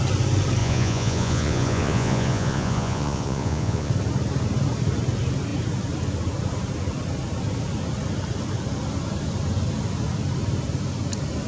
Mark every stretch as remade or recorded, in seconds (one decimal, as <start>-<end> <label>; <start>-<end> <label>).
0.0-0.6 recorded; 0.6-3.9 remade; 3.9-11.5 recorded